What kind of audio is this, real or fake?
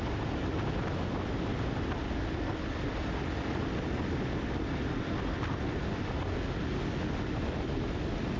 real